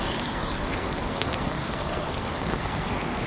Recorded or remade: remade